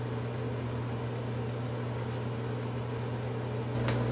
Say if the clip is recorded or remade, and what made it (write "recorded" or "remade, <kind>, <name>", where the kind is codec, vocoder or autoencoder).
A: recorded